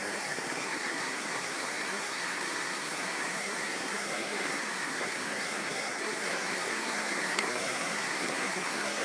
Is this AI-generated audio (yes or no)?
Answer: yes